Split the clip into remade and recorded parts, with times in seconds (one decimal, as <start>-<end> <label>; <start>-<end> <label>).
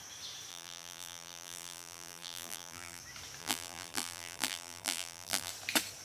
0.0-0.5 recorded; 0.5-3.0 remade; 3.0-3.4 recorded; 3.4-5.5 remade; 5.5-6.0 recorded